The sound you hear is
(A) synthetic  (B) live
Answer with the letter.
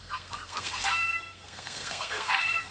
A